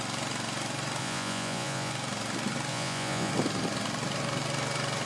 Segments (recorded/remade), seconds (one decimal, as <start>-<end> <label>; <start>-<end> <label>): 0.0-1.0 recorded; 1.0-1.9 remade; 1.9-2.7 recorded; 2.7-3.3 remade; 3.3-5.1 recorded